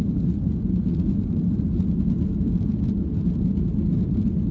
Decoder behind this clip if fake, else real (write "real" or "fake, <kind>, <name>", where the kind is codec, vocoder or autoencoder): real